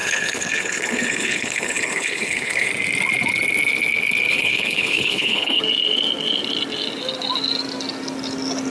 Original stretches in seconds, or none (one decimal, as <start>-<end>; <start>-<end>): 2.7-4.3; 5.6-8.7